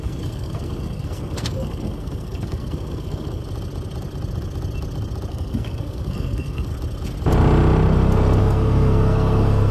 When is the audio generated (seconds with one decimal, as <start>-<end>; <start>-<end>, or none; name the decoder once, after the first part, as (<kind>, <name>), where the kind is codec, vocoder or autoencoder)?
0.0-3.4 (codec, SNAC); 5.3-6.7; 8.4-9.7